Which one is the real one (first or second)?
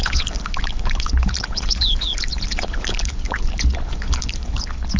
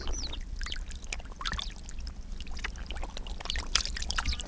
second